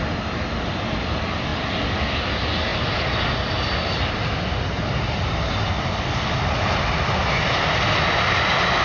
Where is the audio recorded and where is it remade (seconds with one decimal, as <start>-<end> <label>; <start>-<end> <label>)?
0.0-8.8 recorded